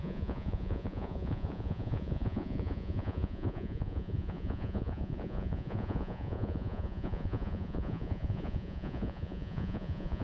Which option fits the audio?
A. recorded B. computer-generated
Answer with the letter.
B